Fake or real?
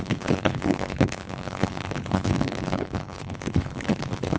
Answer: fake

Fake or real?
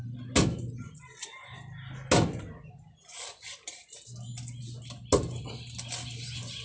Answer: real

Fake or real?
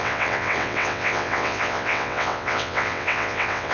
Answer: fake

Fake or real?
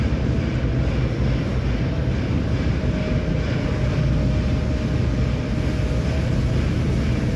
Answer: real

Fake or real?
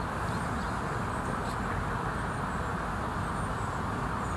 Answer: real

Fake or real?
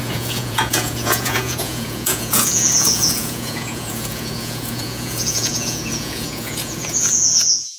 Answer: fake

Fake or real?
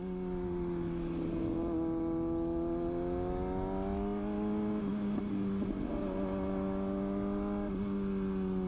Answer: real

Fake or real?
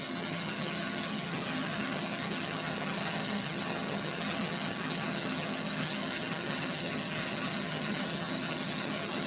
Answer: fake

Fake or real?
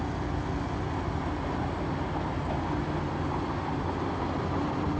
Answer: real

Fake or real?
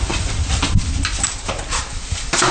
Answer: real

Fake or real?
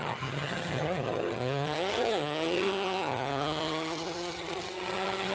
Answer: fake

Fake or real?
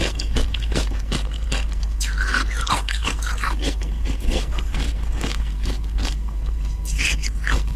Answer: fake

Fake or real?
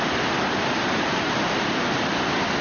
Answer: real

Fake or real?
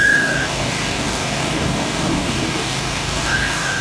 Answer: fake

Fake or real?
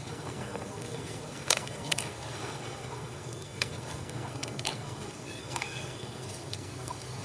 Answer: fake